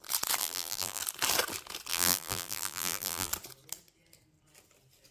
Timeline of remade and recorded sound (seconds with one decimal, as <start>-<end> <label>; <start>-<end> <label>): 0.0-0.4 recorded; 0.4-1.0 remade; 1.0-1.9 recorded; 1.9-3.3 remade; 3.3-5.1 recorded